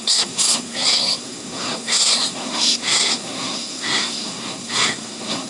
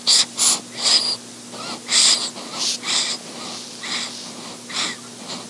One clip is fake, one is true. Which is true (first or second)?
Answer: second